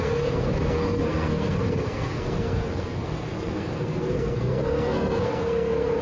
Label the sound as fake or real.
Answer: fake